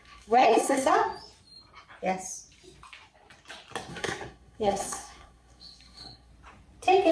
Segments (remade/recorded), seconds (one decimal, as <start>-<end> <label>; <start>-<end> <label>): 0.0-0.9 remade; 0.9-3.9 recorded; 3.9-6.3 remade; 6.3-7.1 recorded